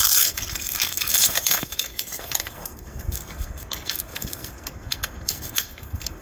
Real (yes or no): no